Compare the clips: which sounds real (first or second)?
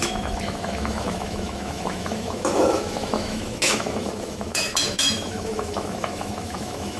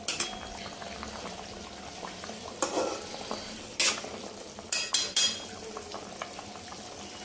second